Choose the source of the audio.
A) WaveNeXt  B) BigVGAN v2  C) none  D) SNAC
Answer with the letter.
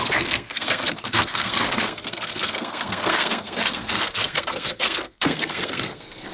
D